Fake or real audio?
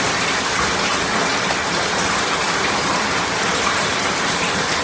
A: fake